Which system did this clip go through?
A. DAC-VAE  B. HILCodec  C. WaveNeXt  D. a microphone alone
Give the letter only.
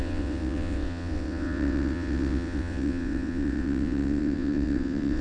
C